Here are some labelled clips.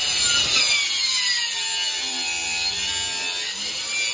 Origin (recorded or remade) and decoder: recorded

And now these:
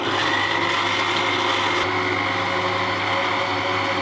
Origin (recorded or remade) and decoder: recorded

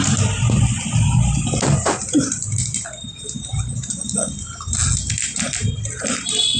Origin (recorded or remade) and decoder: recorded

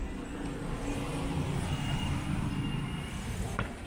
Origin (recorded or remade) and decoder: recorded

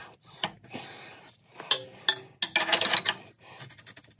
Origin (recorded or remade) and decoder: recorded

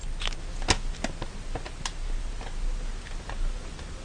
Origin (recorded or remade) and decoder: recorded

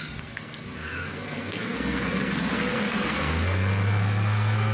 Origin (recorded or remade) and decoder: remade, codec, SNAC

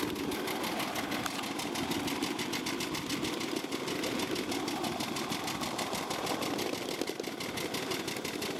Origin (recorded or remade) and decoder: recorded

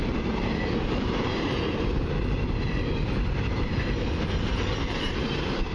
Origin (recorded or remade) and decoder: remade, vocoder, BigVGAN v2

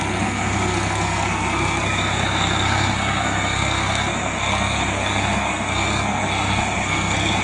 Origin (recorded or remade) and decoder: remade, codec, SNAC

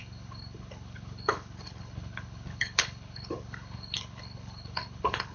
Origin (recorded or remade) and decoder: remade, codec, HILCodec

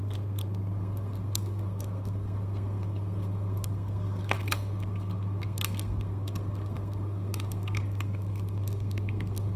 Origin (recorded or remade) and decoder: remade, codec, SNAC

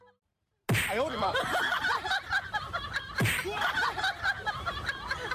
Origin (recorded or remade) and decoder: recorded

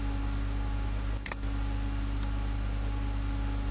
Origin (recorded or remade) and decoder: recorded